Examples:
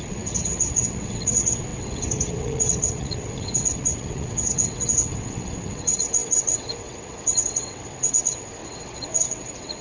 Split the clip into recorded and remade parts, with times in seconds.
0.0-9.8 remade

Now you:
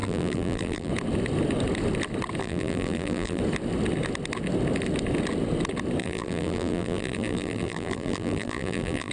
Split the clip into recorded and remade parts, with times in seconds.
0.0-0.9 remade; 0.9-2.4 recorded; 2.4-3.4 remade; 3.4-6.0 recorded; 6.0-9.1 remade

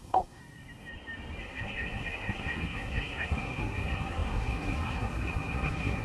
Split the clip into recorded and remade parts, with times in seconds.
0.0-0.4 remade; 0.4-1.4 recorded; 1.4-6.0 remade